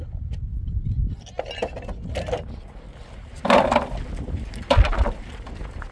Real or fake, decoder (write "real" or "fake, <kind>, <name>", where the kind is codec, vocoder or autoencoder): real